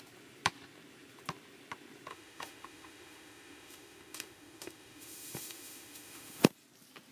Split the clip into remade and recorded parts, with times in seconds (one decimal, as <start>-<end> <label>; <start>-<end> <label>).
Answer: 0.0-2.1 recorded; 2.1-6.4 remade; 6.4-7.1 recorded